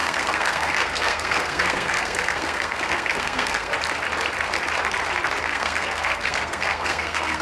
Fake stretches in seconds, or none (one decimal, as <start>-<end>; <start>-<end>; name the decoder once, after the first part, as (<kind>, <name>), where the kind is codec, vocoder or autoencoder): 0.0-3.7 (codec, SNAC); 5.4-7.4